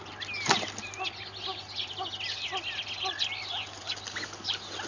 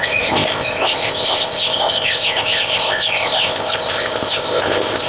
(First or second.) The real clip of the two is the first